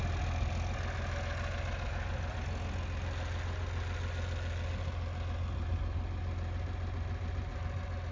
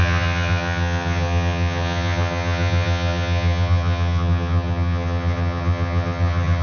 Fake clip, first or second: second